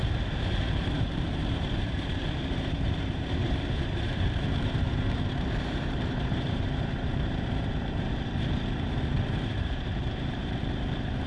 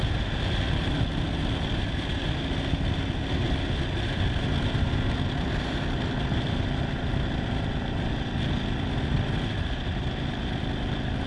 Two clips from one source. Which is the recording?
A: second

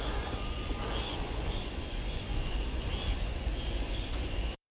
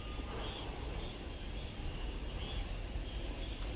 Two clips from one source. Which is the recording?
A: second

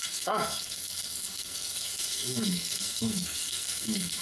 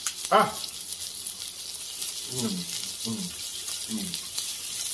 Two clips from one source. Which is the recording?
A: second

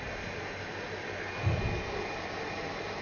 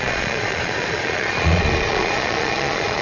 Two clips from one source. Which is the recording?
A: first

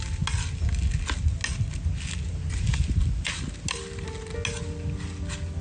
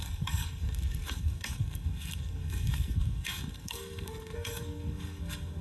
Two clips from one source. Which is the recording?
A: first